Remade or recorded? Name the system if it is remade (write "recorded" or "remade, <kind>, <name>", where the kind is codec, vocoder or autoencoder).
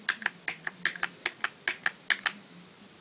recorded